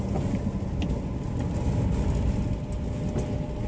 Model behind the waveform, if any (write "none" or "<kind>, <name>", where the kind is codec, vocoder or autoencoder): none